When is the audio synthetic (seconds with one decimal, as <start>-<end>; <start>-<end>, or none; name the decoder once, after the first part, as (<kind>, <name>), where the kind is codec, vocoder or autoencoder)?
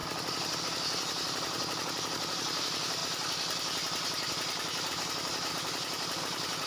0.6-3.0 (vocoder, BigVGAN v2); 4.9-5.5; 6.2-6.7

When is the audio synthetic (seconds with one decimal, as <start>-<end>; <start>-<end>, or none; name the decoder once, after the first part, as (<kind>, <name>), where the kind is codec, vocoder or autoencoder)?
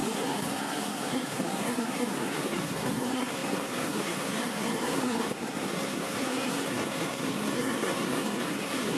0.0-9.0 (codec, SNAC)